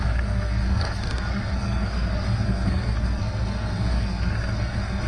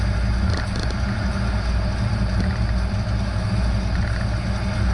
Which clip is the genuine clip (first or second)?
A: second